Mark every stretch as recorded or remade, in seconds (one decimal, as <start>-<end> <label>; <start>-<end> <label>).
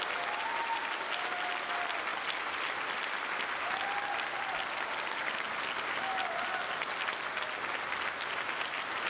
0.0-2.1 recorded; 2.1-3.1 remade; 3.1-9.1 recorded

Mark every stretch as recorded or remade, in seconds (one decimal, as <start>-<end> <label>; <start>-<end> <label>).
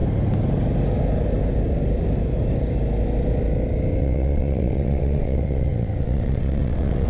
0.0-4.0 recorded; 4.0-7.1 remade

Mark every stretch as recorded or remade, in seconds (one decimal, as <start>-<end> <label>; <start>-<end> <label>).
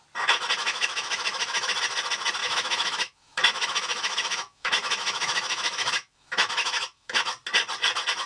0.0-0.6 recorded; 0.6-1.7 remade; 1.7-2.4 recorded; 2.4-7.2 remade; 7.2-8.3 recorded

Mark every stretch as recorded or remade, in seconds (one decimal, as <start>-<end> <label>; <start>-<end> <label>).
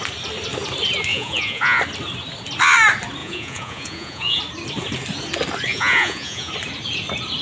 0.0-1.1 recorded; 1.1-1.8 remade; 1.8-3.2 recorded; 3.2-4.4 remade; 4.4-5.7 recorded; 5.7-6.5 remade; 6.5-7.4 recorded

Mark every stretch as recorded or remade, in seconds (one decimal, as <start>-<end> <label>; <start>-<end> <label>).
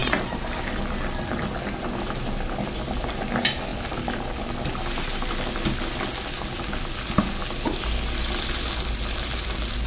0.0-0.6 remade; 0.6-9.9 recorded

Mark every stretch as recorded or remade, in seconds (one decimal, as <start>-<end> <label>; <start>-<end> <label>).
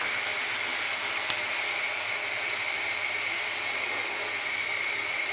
0.0-5.3 recorded